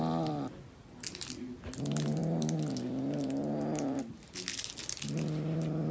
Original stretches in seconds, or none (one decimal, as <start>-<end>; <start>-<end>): 0.0-5.9